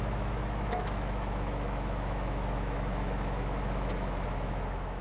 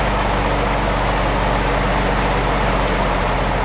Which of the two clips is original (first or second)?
second